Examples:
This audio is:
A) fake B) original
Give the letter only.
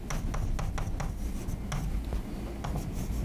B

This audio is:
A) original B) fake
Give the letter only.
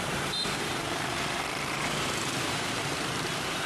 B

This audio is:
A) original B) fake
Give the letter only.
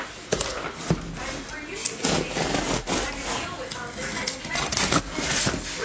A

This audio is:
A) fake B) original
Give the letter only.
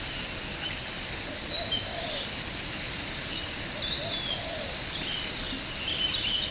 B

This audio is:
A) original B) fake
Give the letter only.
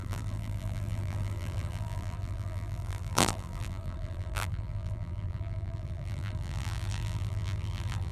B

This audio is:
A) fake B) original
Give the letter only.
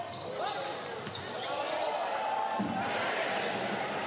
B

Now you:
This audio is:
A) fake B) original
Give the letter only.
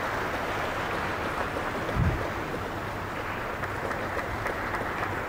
B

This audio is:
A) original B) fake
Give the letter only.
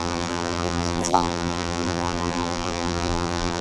B